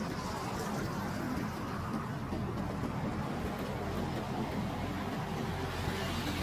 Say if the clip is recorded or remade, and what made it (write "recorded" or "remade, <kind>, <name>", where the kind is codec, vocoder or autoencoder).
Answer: recorded